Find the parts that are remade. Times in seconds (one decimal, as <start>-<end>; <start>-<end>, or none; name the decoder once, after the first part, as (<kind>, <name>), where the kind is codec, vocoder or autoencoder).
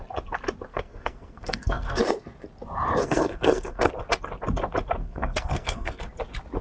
0.7-2.0 (codec, SNAC); 3.0-3.9; 5.0-6.0